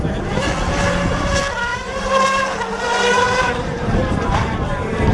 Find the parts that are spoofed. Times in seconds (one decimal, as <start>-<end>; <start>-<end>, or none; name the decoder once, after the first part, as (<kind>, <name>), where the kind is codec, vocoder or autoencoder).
1.7-5.1 (vocoder, BigVGAN v2)